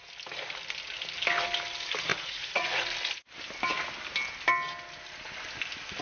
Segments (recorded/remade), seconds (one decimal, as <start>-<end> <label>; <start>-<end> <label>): 0.0-2.1 recorded; 2.1-2.9 remade; 2.9-6.0 recorded